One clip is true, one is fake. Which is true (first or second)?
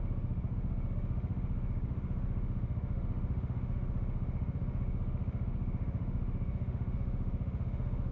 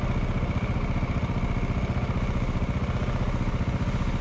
second